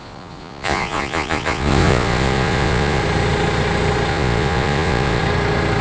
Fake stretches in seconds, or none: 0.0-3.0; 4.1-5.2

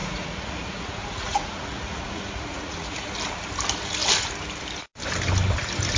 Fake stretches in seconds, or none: 0.0-3.1

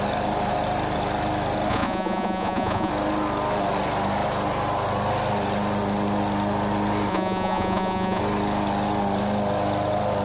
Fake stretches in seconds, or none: 1.7-2.9; 7.1-8.2

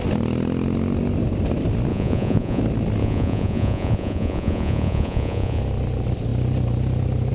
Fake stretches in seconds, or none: 1.9-2.6; 3.0-5.6

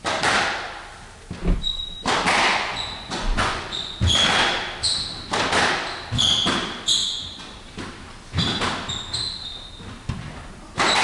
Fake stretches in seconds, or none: 2.5-4.0; 7.0-7.6

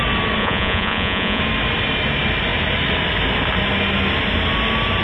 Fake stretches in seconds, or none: 0.4-1.4

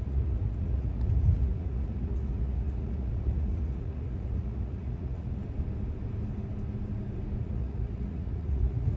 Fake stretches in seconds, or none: 0.0-5.4; 7.4-9.0